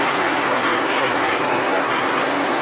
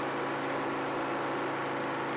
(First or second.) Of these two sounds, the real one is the second